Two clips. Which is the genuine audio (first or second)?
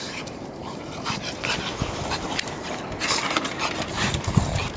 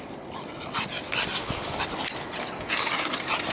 second